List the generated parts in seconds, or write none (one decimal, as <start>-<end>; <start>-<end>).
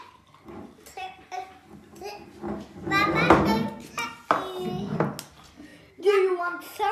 none